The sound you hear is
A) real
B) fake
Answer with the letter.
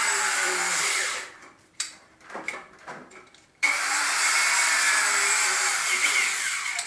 B